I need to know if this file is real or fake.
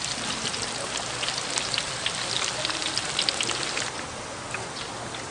real